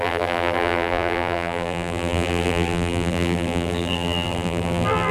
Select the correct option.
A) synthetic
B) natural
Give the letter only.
A